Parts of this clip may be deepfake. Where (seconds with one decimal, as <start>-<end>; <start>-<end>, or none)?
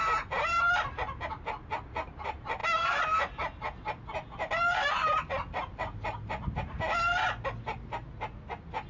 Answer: none